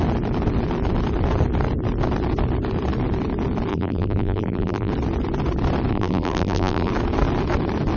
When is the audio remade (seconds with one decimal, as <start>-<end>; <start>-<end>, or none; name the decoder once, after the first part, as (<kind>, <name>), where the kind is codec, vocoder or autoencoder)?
3.7-4.9 (vocoder, BigVGAN v2); 5.9-6.9